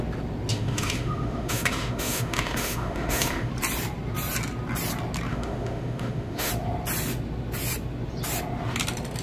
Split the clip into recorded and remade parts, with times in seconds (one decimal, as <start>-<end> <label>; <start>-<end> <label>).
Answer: 0.0-0.5 recorded; 0.5-3.5 remade; 3.5-5.3 recorded; 5.3-6.5 remade; 6.5-9.2 recorded